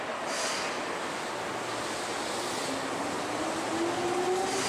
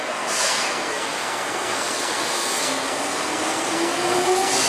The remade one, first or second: second